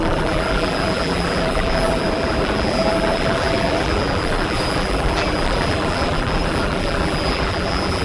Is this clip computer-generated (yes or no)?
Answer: yes